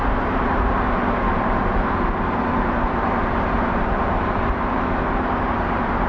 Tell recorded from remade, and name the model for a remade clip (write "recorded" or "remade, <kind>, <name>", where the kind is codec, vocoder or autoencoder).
recorded